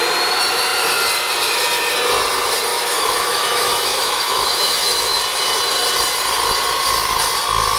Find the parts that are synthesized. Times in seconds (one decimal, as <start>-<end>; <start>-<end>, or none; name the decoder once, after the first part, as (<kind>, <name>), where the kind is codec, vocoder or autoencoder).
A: 2.7-5.2 (autoencoder, DAC-VAE)

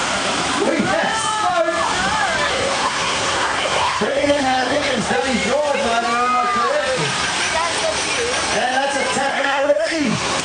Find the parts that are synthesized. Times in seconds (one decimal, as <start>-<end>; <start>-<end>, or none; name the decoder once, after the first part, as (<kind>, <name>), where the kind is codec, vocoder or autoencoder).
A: 2.5-5.1 (codec, SNAC); 9.3-10.4

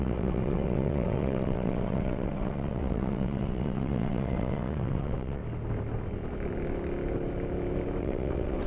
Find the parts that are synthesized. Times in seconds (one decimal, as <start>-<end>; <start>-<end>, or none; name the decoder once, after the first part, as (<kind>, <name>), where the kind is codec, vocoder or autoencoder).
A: 0.0-5.4 (vocoder, WaveNeXt); 8.0-8.7

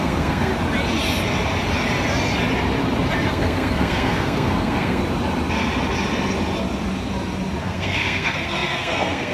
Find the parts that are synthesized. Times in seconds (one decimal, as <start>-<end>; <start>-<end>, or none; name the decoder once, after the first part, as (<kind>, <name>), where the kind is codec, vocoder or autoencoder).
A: 0.0-0.5 (codec, SNAC); 3.3-5.0; 7.6-9.3